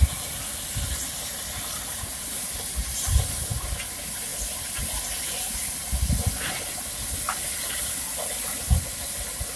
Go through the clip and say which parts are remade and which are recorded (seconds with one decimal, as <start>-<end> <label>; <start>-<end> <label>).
0.0-9.6 recorded

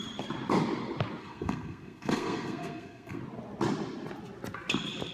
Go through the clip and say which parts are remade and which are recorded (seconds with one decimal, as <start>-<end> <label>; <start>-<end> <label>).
0.0-1.2 recorded; 1.2-3.2 remade; 3.2-5.1 recorded